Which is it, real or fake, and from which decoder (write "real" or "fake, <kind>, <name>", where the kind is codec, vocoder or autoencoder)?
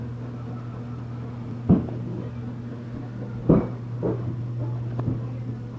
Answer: real